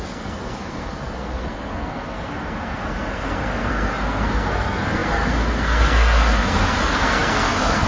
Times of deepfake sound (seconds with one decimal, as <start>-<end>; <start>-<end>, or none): 0.0-7.9